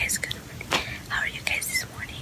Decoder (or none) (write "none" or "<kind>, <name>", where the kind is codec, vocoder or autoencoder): vocoder, BigVGAN v2